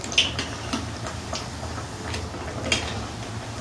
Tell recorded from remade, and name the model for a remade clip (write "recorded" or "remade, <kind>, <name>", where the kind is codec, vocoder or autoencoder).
recorded